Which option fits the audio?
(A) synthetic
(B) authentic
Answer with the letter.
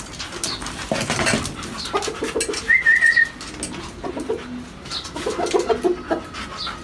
B